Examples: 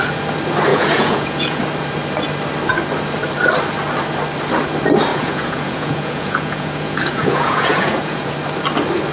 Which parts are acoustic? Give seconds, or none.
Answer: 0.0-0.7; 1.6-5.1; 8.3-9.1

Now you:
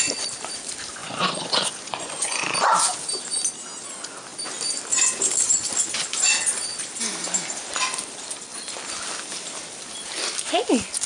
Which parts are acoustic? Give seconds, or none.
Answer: 0.0-1.0; 2.7-11.1

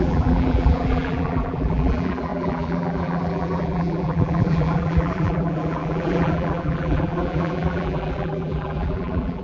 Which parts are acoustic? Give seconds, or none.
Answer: none

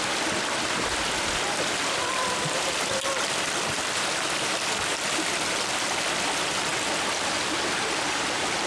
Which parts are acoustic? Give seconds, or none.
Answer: 0.0-1.7; 5.7-6.7; 7.6-8.7